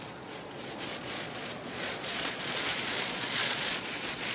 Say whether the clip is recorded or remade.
remade